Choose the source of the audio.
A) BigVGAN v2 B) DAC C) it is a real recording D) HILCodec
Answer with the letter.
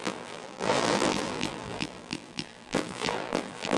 A